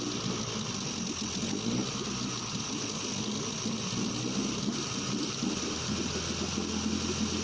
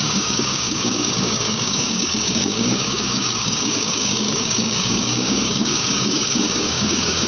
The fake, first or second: second